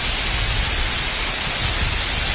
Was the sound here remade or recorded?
recorded